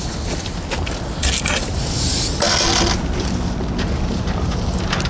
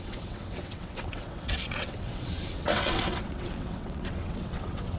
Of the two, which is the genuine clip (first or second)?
first